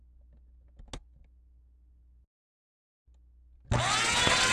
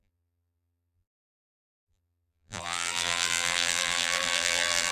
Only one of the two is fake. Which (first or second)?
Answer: second